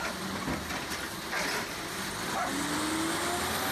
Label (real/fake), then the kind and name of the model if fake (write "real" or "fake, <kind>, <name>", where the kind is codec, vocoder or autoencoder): real